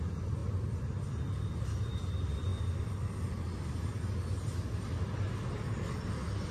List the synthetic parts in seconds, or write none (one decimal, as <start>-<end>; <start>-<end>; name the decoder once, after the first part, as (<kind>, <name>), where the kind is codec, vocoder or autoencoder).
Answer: none